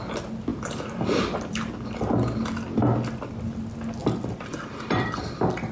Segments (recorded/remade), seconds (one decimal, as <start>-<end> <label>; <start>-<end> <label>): 0.0-0.5 recorded; 0.5-1.7 remade; 1.7-4.0 recorded; 4.0-5.2 remade; 5.2-5.7 recorded